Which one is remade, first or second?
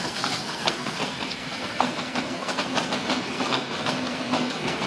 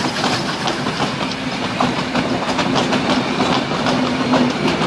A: first